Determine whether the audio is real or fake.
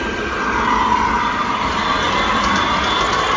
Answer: fake